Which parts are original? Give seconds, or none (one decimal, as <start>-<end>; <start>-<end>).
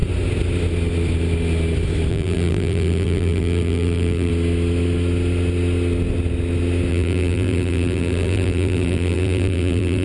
0.0-2.1; 4.3-6.9